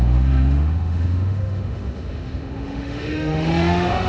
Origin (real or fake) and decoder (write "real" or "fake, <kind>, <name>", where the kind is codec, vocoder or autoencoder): fake, autoencoder, DAC-VAE